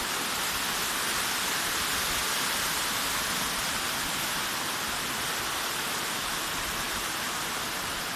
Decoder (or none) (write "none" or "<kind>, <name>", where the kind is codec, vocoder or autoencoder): none